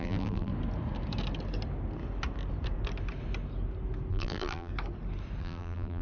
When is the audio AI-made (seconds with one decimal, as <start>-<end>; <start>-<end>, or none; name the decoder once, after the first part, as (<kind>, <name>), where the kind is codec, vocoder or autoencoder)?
0.0-0.5 (vocoder, BigVGAN v2); 4.1-4.7; 5.4-6.0